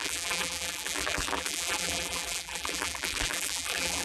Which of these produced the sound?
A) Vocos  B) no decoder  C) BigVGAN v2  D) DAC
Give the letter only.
C